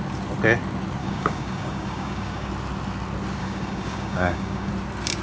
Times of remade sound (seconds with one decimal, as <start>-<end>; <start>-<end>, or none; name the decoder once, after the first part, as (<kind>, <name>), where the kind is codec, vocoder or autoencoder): 1.0-2.5 (codec, DAC); 3.4-4.7